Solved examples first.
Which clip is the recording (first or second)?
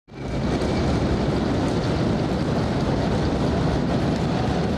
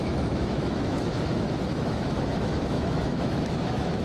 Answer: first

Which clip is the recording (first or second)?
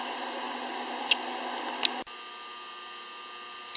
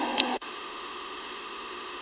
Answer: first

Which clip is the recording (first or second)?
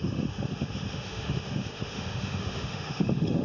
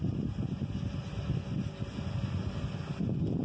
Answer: second